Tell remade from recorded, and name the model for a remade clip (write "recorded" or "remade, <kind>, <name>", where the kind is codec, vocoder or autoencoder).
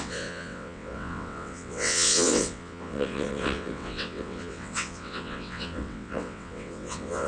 remade, vocoder, WaveNeXt